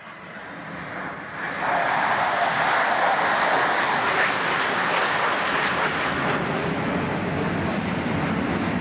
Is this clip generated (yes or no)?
no